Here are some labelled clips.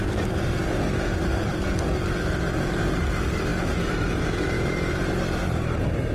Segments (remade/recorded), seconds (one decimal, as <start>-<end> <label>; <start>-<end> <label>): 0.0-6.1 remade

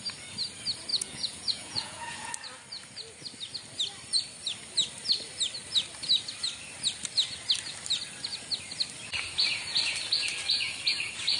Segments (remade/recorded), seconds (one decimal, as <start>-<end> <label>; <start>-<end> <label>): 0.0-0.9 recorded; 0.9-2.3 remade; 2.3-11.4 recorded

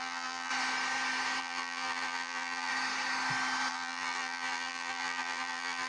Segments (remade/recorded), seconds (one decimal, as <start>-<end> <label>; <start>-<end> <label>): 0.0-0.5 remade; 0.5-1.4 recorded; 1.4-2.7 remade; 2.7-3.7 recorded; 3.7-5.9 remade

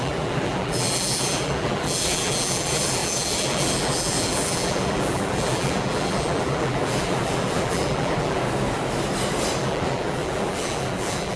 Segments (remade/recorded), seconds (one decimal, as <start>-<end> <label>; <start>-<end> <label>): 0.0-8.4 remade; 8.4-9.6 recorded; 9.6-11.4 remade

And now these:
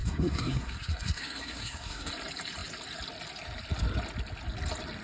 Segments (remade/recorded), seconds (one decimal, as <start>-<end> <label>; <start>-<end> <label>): 0.0-2.1 remade; 2.1-5.0 recorded